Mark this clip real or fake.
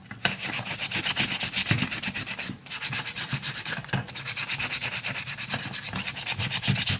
real